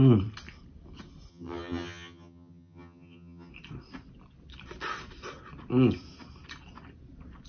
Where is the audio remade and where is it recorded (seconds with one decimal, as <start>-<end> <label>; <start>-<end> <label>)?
0.0-1.3 recorded; 1.3-3.5 remade; 3.5-7.5 recorded